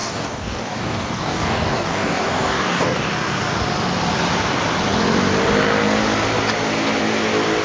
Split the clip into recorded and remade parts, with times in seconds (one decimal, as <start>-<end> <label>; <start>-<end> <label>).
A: 0.0-3.1 remade; 3.1-7.6 recorded